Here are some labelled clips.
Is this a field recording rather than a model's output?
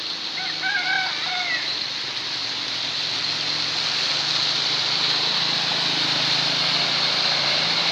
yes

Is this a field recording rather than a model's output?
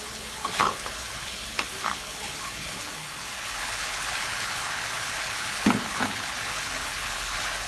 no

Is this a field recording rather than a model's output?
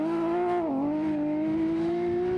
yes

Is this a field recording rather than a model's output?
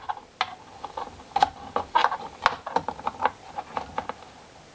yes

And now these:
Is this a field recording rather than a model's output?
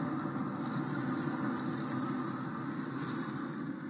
yes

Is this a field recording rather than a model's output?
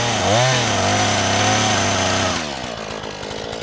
yes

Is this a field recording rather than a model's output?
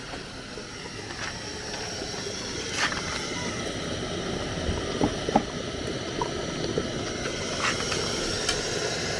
yes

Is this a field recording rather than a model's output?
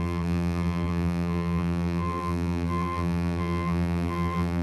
no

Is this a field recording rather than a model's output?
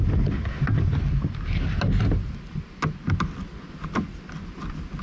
yes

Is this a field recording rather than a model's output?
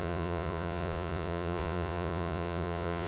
no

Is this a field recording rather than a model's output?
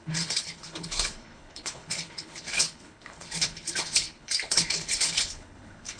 no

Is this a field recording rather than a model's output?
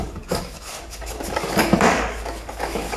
no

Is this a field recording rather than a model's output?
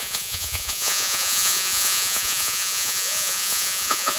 no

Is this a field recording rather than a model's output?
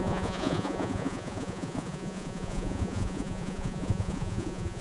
no